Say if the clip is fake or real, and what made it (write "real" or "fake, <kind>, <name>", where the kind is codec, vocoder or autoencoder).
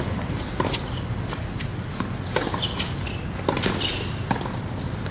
real